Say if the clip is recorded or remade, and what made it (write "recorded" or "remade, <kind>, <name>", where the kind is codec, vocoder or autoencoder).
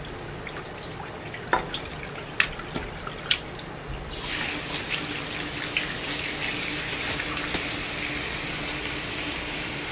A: recorded